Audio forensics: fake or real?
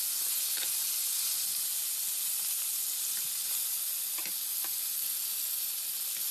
real